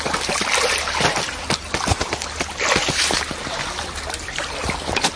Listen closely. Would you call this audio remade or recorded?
recorded